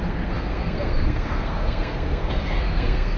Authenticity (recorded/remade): remade